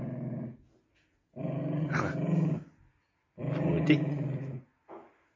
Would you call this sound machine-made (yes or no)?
no